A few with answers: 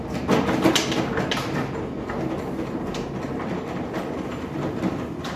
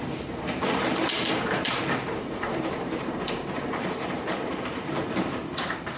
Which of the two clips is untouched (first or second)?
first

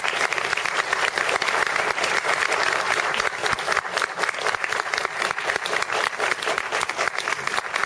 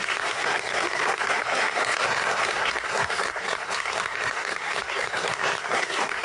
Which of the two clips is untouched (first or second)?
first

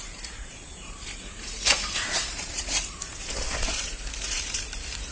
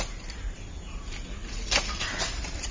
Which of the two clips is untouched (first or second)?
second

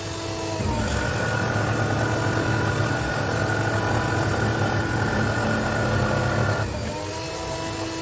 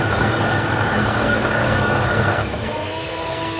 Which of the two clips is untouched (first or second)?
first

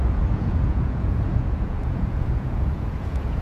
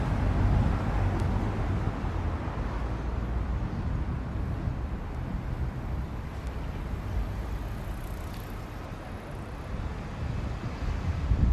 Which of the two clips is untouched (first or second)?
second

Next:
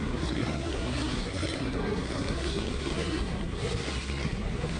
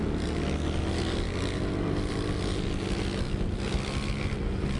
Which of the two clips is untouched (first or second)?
second